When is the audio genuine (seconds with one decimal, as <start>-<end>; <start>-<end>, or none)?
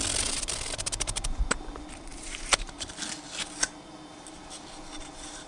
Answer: 0.0-2.1; 3.0-4.1